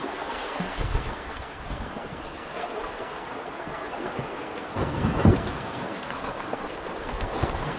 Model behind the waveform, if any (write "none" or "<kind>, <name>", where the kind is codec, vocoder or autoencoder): codec, SNAC